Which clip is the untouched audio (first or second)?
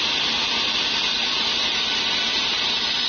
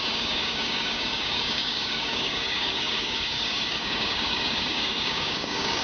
first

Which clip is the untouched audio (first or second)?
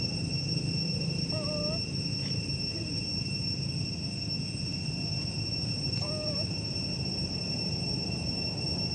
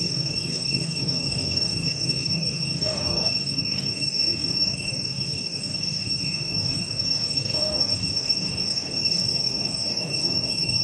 first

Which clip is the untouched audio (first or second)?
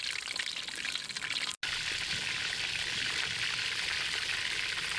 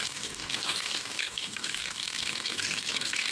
first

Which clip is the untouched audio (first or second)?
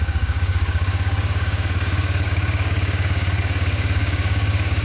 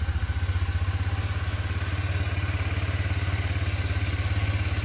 second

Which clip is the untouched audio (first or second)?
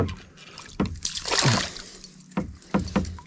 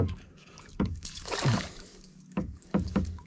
first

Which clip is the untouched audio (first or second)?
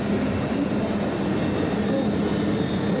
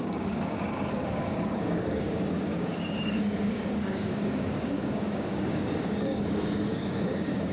first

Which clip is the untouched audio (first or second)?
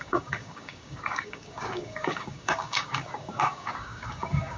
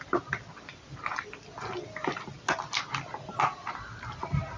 second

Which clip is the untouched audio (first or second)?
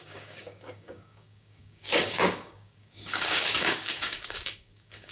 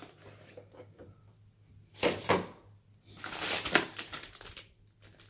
second